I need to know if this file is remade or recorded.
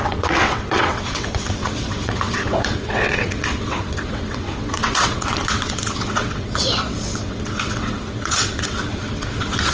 remade